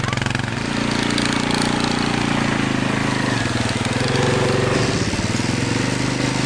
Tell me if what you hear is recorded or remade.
recorded